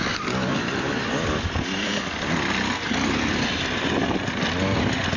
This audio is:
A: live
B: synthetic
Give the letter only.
A